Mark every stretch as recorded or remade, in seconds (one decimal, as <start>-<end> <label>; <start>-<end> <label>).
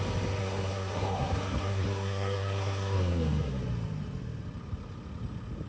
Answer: 0.0-0.4 recorded; 0.4-3.5 remade; 3.5-5.7 recorded